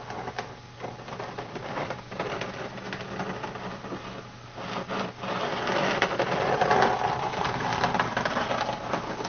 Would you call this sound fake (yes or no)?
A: no